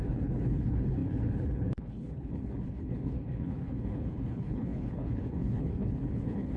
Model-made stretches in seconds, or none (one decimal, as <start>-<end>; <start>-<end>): 0.0-6.6